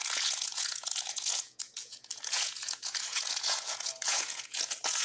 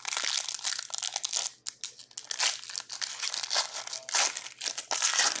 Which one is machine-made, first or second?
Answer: first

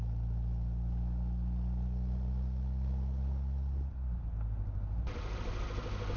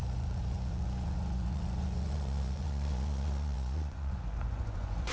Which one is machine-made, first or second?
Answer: second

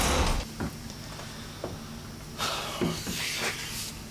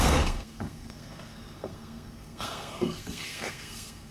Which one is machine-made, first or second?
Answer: second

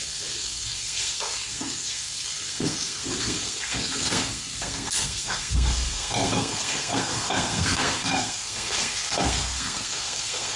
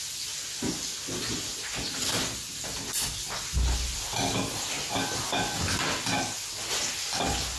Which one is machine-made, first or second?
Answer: first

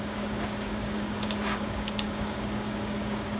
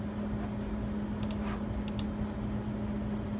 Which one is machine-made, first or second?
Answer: first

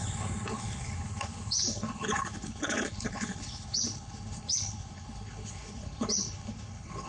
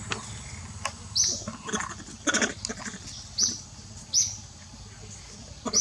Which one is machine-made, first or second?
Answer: first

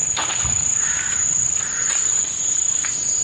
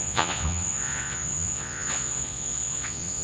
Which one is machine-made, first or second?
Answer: second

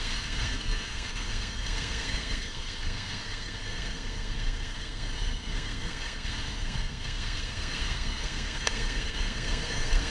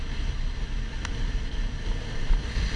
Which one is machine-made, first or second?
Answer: first